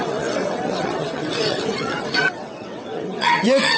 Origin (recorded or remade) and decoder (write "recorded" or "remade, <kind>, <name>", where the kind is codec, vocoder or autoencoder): remade, vocoder, WaveNeXt